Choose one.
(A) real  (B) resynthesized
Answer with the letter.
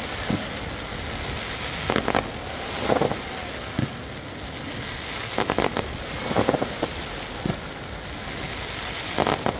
A